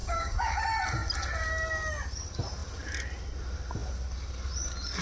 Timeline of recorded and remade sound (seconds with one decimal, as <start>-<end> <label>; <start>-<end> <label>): 0.0-0.6 remade; 0.6-5.0 recorded